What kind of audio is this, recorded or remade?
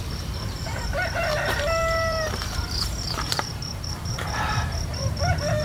remade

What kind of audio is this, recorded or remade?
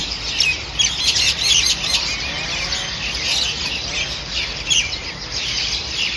recorded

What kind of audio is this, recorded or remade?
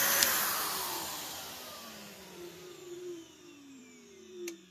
remade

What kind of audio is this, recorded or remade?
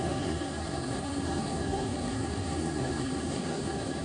remade